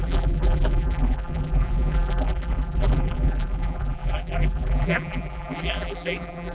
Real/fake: fake